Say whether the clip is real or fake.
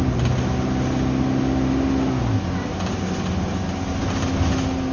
real